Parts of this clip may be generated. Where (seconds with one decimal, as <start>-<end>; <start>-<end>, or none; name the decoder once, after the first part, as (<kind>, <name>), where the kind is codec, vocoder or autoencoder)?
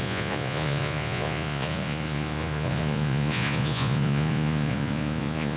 0.0-5.6 (vocoder, Vocos)